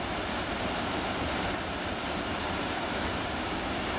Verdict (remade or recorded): recorded